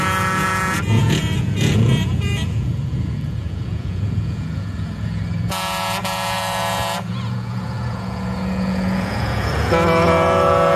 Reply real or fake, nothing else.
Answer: fake